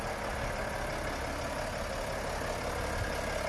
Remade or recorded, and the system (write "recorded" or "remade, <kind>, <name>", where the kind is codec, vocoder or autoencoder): recorded